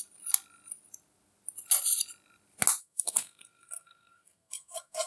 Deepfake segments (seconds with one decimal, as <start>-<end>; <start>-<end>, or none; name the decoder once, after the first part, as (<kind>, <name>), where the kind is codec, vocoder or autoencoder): 2.8-5.1 (codec, SNAC)